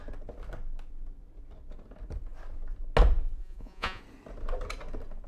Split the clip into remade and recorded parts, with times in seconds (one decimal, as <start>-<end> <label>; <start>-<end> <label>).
0.0-3.4 recorded; 3.4-4.0 remade; 4.0-5.3 recorded